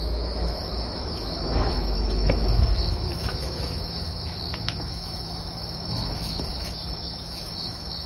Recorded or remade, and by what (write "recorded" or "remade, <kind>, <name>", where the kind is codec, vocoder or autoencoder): remade, autoencoder, DAC-VAE